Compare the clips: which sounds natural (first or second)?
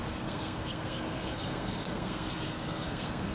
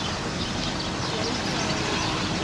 second